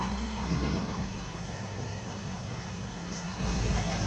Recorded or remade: remade